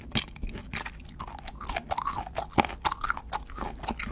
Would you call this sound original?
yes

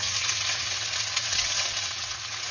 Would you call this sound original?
no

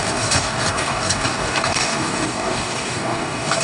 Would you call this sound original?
no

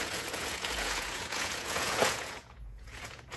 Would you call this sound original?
no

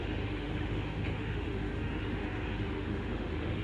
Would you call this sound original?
no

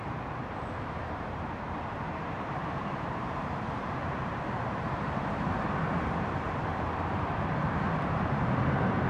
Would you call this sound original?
no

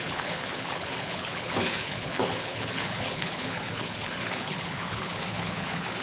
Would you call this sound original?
no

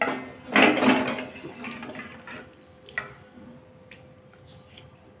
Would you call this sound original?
yes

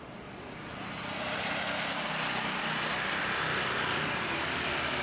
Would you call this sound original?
yes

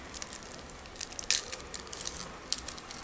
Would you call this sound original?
yes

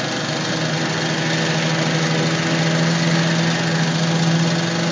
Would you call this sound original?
yes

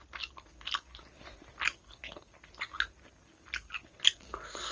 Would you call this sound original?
yes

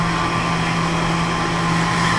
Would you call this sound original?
yes